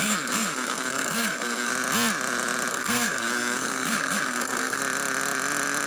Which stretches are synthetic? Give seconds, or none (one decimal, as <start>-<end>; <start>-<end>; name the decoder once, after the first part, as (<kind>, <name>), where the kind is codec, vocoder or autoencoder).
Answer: 0.0-1.7 (codec, SNAC); 2.7-4.8